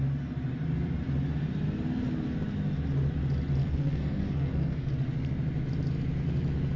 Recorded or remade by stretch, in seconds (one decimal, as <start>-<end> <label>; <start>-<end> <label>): 0.0-3.6 recorded; 3.6-4.9 remade; 4.9-6.8 recorded